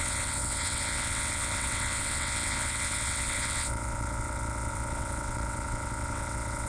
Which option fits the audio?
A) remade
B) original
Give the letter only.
A